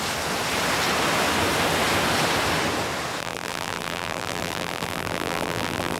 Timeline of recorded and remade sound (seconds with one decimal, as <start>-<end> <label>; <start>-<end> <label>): 0.0-3.2 recorded; 3.2-6.0 remade